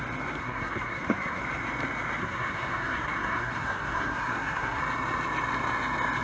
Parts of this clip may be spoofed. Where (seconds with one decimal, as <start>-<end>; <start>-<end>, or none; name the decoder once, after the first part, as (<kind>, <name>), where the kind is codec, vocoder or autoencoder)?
0.4-1.4 (codec, SNAC); 2.2-4.8